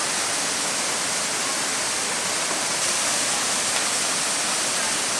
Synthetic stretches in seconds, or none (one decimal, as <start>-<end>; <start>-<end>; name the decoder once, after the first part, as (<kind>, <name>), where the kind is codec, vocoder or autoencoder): none